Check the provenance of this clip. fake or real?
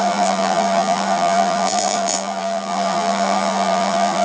fake